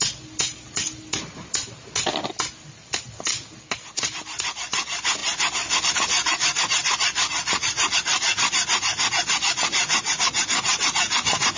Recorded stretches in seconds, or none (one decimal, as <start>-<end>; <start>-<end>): 0.0-11.6